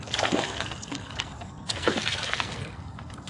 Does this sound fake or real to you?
fake